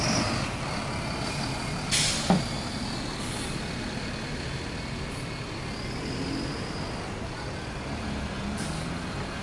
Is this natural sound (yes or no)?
yes